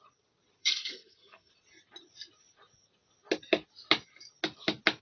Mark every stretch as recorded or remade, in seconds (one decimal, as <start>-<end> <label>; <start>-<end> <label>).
0.0-0.6 recorded; 0.6-1.5 remade; 1.5-5.0 recorded